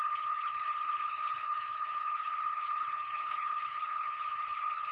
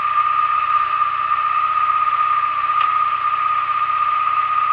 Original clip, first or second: second